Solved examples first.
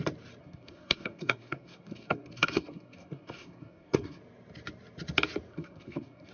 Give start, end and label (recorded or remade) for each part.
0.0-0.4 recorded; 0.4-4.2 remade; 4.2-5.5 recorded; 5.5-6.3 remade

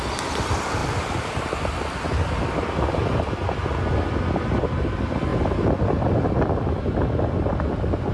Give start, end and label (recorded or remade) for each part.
0.0-0.8 recorded; 0.8-2.7 remade; 2.7-8.1 recorded

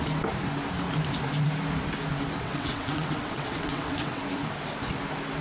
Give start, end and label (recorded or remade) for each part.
0.0-2.4 recorded; 2.4-4.2 remade; 4.2-5.4 recorded

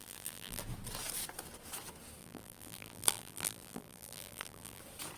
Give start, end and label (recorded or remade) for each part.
0.0-0.6 remade; 0.6-2.2 recorded; 2.2-4.8 remade; 4.8-5.2 recorded

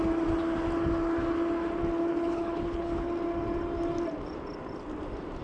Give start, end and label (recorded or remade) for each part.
0.0-2.1 recorded; 2.1-3.1 remade; 3.1-5.4 recorded

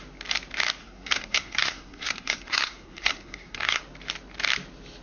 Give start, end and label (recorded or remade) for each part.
0.0-0.8 recorded; 0.8-3.8 remade; 3.8-5.0 recorded